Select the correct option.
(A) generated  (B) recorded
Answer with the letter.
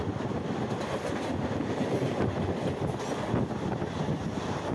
B